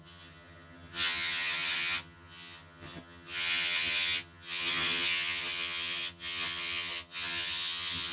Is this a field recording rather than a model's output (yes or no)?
no